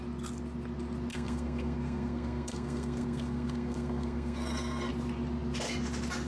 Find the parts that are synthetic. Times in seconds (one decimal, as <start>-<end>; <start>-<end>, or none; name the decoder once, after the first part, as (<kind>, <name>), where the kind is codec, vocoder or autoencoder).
1.1-4.9 (codec, SNAC)